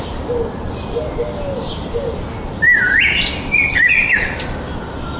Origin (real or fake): real